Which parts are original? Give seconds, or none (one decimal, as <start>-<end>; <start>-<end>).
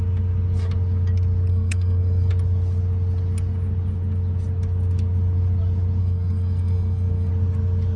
0.0-1.5; 2.3-6.0; 7.3-8.0